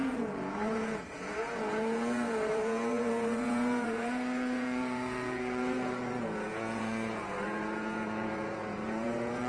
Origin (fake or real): fake